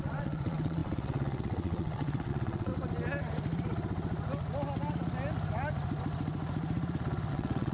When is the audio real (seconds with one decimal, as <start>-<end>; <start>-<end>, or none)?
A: 2.7-7.3